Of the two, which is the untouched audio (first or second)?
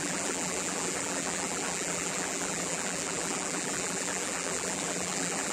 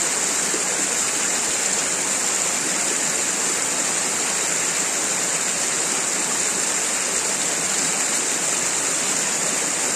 second